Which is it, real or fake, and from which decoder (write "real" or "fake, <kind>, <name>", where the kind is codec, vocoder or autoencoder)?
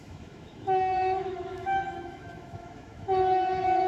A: fake, autoencoder, DAC-VAE